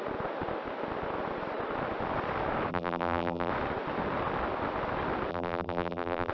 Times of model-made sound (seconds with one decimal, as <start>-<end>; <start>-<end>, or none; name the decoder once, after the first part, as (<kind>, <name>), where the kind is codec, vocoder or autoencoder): 2.7-3.5 (vocoder, BigVGAN v2); 5.3-6.3